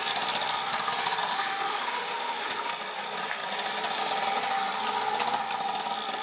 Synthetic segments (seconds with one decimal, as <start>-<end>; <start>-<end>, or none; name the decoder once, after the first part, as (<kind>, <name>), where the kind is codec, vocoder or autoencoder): 1.3-2.7 (autoencoder, DAC-VAE)